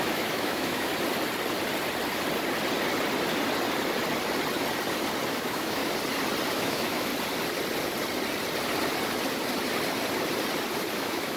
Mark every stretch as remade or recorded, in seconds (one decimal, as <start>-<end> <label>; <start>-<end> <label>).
0.0-0.9 remade; 0.9-5.3 recorded; 5.3-5.8 remade; 5.8-6.5 recorded; 6.5-7.1 remade; 7.1-10.9 recorded; 10.9-11.4 remade